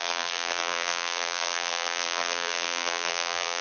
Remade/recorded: remade